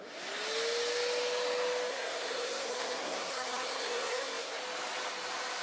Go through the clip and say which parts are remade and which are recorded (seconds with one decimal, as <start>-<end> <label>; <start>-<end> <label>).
0.0-1.9 recorded; 1.9-4.6 remade; 4.6-5.6 recorded